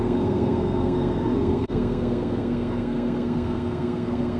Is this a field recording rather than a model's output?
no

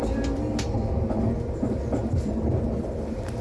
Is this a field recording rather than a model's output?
yes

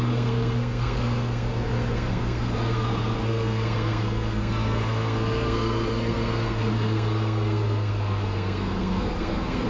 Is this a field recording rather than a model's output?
no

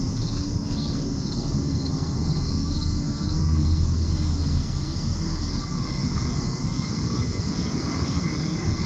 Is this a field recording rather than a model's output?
no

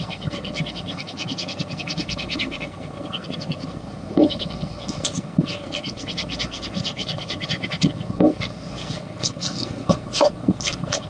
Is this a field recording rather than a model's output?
no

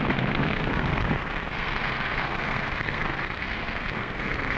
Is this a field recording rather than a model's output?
no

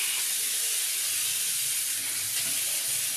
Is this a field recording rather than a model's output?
yes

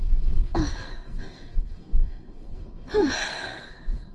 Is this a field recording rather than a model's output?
no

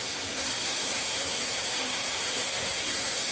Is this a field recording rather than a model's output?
no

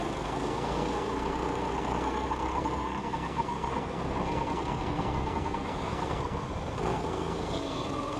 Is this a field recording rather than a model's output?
no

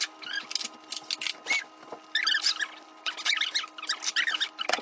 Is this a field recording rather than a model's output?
yes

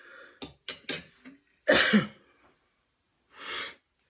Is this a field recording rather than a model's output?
yes